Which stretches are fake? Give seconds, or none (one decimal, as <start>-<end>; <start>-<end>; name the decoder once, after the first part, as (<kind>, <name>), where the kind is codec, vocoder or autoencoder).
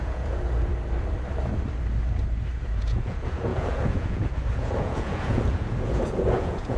0.0-0.7 (vocoder, Vocos); 2.8-6.8